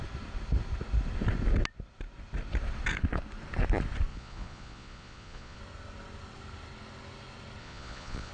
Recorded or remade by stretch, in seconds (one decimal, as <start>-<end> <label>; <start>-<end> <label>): 0.0-4.1 recorded; 4.1-5.6 remade; 5.6-7.6 recorded; 7.6-8.3 remade